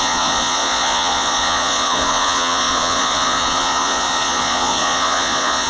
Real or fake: fake